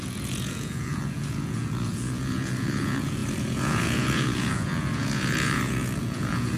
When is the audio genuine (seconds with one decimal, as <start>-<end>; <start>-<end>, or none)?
none